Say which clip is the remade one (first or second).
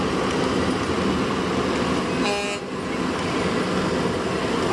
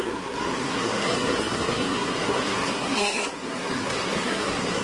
second